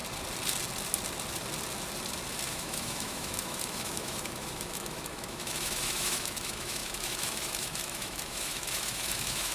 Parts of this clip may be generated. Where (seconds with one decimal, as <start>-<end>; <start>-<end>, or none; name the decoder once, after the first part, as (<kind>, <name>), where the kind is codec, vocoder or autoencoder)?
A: 2.5-9.5 (autoencoder, DAC-VAE)